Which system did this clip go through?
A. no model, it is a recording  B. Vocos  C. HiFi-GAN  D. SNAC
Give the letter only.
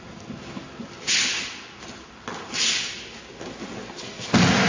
A